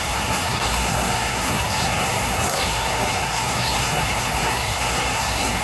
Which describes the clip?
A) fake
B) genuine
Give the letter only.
A